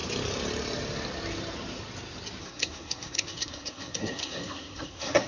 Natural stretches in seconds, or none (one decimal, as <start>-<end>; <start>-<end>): 0.0-2.4